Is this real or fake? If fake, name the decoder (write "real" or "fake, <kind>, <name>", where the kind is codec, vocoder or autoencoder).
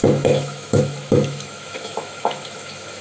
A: fake, autoencoder, DAC-VAE